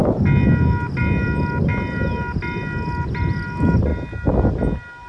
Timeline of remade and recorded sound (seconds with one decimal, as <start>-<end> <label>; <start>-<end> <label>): 0.0-5.1 recorded

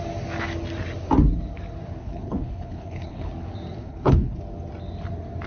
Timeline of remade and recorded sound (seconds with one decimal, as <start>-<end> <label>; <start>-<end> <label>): 0.0-2.0 recorded; 2.0-3.3 remade; 3.3-3.8 recorded; 3.8-4.4 remade; 4.4-5.5 recorded

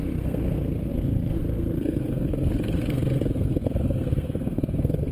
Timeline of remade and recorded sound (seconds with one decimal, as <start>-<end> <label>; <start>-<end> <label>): 0.0-5.1 remade

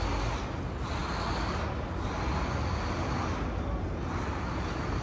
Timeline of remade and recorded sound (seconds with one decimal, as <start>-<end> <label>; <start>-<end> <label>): 0.0-5.0 recorded